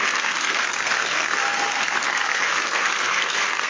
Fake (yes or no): yes